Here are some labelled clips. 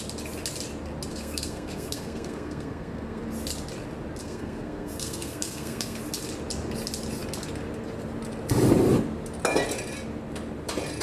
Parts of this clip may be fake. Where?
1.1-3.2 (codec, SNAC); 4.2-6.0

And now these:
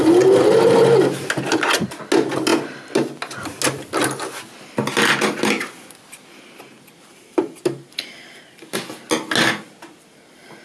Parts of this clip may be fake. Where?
none

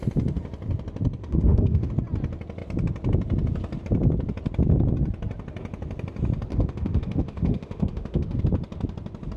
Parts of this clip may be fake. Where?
1.2-1.9 (autoencoder, DAC-VAE); 6.5-8.4

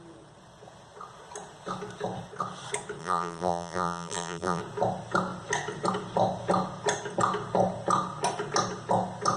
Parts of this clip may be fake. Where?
3.0-4.6 (vocoder, BigVGAN v2)